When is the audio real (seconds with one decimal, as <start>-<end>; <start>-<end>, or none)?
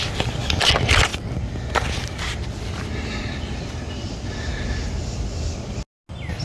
0.0-6.4